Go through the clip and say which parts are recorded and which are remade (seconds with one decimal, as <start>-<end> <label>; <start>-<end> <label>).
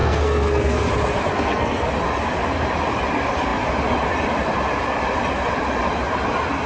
0.0-0.9 remade; 0.9-1.3 recorded; 1.3-1.9 remade; 1.9-6.7 recorded